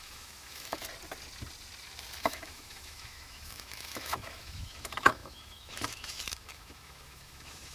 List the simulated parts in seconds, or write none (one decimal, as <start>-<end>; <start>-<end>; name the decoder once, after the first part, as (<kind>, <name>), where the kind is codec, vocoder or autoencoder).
0.0-0.8 (autoencoder, DAC-VAE); 2.2-7.7